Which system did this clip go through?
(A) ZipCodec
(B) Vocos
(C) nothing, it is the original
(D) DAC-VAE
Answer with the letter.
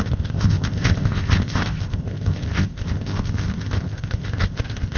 A